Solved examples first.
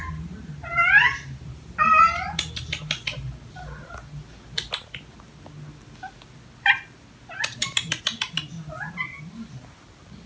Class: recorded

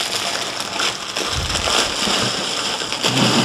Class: recorded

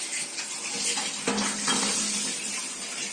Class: recorded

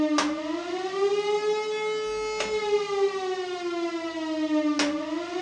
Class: recorded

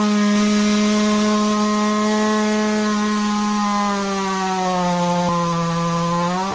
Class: recorded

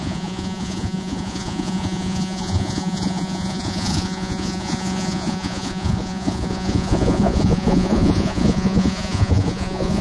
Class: remade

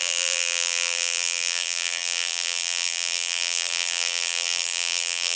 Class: remade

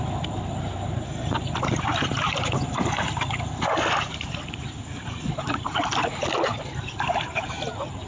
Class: recorded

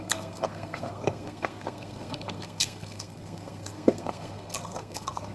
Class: remade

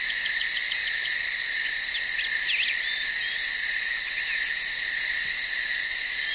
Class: recorded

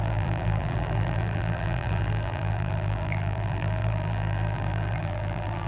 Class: remade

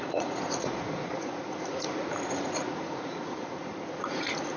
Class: remade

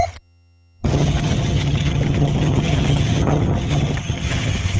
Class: remade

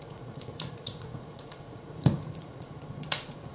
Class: remade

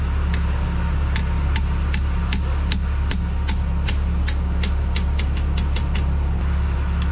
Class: recorded